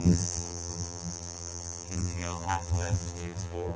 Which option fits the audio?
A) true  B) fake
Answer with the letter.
B